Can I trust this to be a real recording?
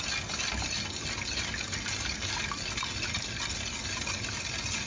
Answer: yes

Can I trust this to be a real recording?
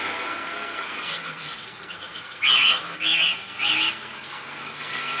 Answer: no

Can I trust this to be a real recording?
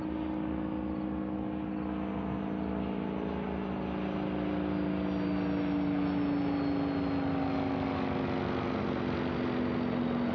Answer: yes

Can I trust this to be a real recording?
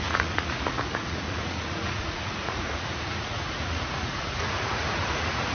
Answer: no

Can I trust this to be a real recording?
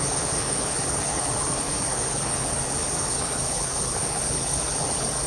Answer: no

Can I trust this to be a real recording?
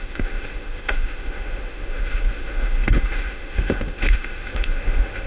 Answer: no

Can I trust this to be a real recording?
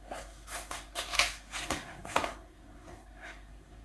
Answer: no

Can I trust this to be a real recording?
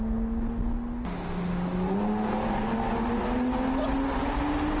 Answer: yes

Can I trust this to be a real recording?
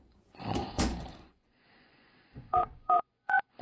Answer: no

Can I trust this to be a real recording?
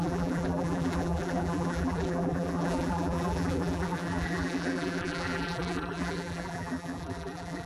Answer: no